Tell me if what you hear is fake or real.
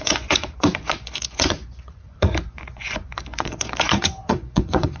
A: fake